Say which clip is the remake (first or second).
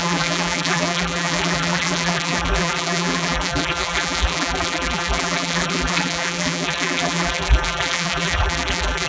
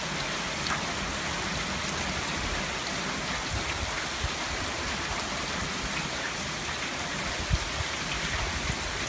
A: first